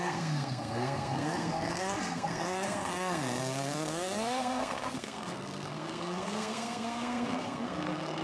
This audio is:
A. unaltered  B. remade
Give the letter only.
B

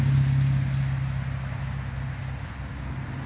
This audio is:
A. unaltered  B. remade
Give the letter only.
A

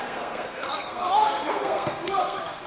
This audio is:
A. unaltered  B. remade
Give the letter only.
B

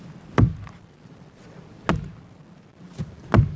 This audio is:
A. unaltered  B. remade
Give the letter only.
A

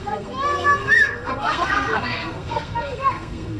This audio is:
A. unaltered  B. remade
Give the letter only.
B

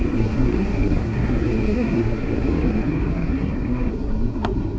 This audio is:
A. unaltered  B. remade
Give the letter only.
B